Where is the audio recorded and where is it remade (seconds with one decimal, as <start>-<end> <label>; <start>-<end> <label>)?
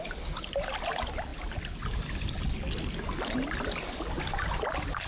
0.0-5.1 recorded